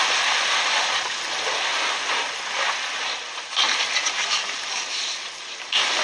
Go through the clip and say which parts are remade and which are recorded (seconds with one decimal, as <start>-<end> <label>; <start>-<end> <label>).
0.0-6.0 recorded